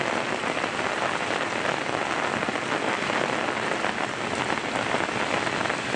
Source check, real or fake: real